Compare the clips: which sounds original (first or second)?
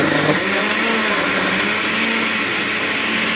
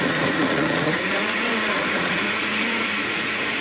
first